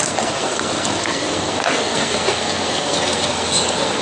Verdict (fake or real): fake